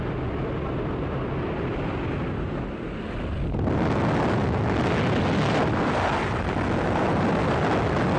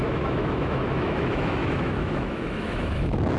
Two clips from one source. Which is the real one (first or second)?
first